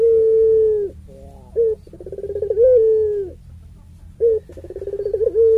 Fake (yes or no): no